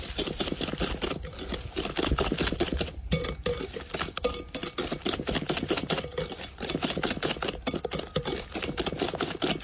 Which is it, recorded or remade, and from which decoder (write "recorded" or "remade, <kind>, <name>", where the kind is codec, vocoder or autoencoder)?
recorded